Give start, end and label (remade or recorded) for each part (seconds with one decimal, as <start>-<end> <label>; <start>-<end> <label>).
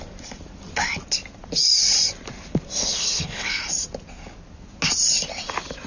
0.0-2.8 recorded; 2.8-3.5 remade; 3.5-5.9 recorded